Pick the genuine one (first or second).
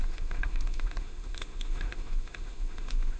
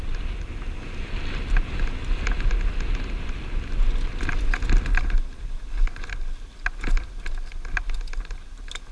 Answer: second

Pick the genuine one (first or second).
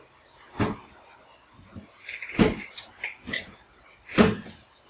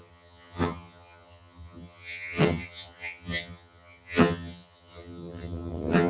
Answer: first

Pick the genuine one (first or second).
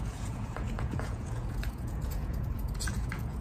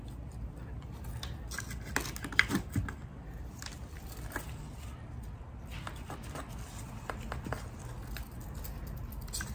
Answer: second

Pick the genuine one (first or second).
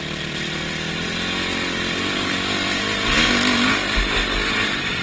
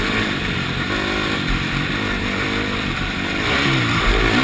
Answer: first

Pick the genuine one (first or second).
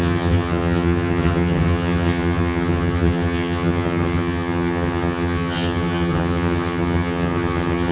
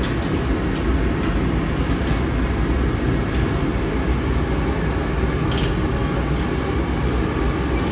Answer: second